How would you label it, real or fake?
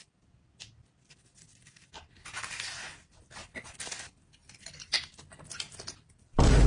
real